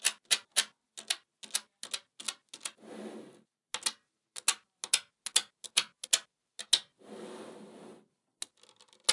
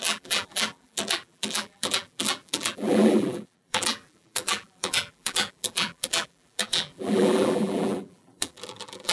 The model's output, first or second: second